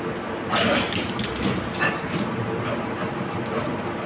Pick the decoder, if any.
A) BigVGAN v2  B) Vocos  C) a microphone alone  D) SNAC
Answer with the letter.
C